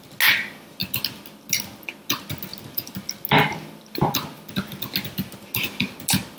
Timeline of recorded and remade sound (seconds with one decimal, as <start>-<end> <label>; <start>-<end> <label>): 0.0-6.4 recorded